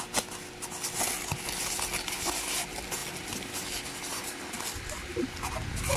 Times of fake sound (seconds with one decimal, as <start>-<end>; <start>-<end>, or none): none